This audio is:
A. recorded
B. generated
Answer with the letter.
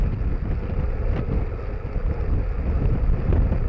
A